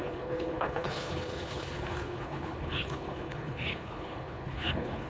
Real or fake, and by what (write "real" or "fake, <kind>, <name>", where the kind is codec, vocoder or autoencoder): fake, codec, HILCodec